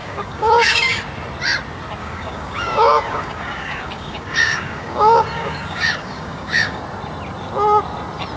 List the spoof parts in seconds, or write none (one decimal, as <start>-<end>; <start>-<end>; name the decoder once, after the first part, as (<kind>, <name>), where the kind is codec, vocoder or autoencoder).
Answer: 0.0-1.0 (codec, DAC); 2.0-6.8